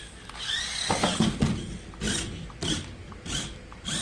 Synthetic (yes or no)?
no